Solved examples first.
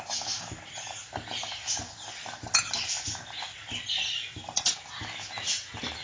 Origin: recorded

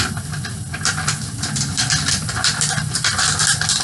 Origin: recorded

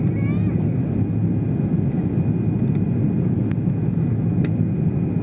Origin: recorded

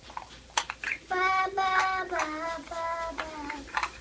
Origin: recorded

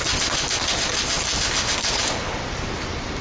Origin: recorded